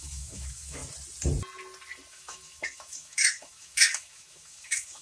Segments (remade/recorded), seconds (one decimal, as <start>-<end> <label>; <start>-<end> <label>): 0.0-0.8 remade; 0.8-2.1 recorded; 2.1-5.0 remade